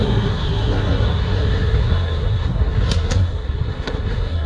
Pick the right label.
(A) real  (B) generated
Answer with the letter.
B